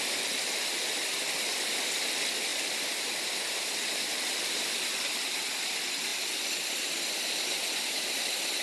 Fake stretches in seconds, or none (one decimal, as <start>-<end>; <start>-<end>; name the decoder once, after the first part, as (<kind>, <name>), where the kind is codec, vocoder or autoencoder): 2.5-4.9 (vocoder, BigVGAN v2); 6.1-8.2

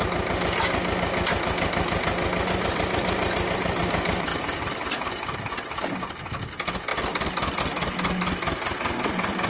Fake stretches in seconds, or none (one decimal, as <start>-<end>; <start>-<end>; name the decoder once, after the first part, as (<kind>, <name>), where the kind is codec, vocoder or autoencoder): 2.7-3.8 (vocoder, BigVGAN v2); 4.3-5.8; 6.9-7.6

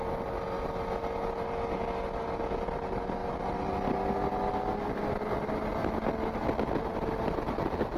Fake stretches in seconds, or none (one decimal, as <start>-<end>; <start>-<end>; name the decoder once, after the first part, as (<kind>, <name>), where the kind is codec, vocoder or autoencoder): none